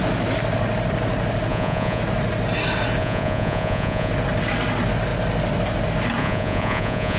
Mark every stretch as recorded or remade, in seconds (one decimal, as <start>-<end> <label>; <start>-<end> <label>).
0.0-1.5 recorded; 1.5-2.0 remade; 2.0-3.0 recorded; 3.0-4.1 remade; 4.1-6.2 recorded; 6.2-7.2 remade